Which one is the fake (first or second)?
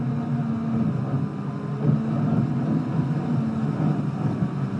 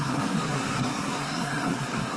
second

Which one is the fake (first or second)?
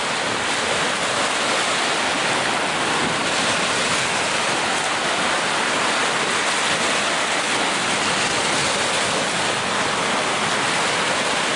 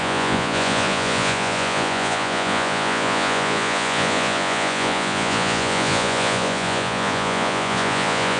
second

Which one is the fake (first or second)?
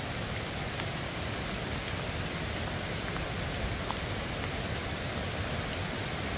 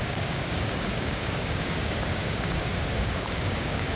second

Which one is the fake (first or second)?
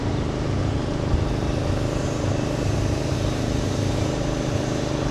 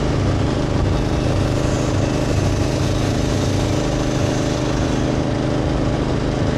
first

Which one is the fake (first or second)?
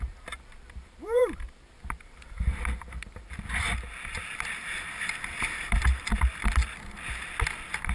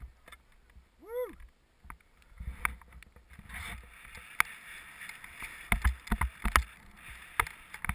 first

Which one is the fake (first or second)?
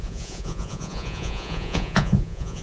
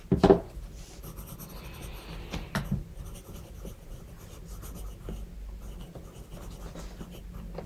first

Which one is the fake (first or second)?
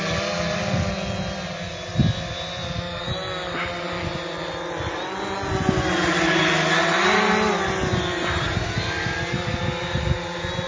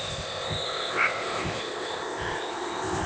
second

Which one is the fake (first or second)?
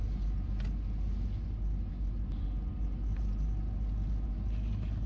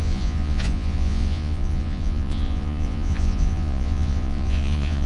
second